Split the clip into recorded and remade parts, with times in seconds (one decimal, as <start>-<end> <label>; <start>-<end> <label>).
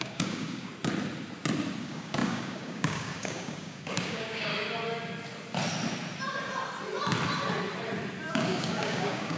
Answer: 0.0-0.7 remade; 0.7-1.8 recorded; 1.8-4.5 remade; 4.5-8.3 recorded; 8.3-9.4 remade